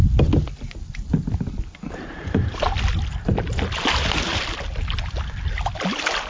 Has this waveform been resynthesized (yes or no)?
no